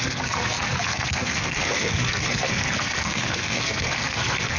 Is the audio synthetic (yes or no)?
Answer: yes